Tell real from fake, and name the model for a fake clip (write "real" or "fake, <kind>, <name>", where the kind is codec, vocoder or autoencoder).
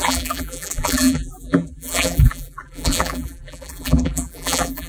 fake, vocoder, BigVGAN v2